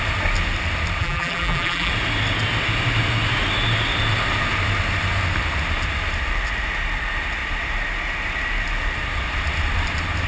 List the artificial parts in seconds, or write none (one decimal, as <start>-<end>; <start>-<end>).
1.0-1.9